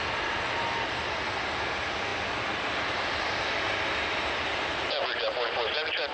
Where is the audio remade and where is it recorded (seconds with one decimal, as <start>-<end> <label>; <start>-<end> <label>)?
0.0-6.1 recorded